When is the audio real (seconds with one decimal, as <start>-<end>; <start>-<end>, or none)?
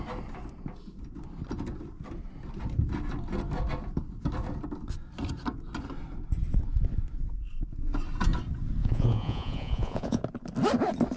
0.0-8.8; 10.2-11.2